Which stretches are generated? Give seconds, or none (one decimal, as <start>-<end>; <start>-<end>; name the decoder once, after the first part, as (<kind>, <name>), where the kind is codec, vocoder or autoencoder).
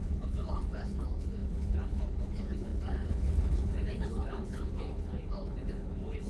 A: 0.0-6.3 (codec, HILCodec)